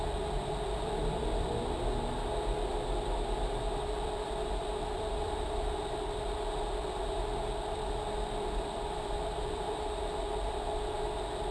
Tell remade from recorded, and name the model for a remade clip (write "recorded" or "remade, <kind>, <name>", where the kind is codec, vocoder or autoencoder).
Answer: remade, vocoder, BigVGAN v2